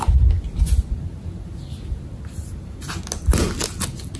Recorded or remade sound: recorded